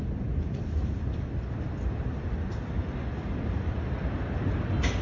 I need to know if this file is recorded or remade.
recorded